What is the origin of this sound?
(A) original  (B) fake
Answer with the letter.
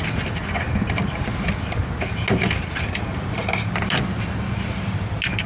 A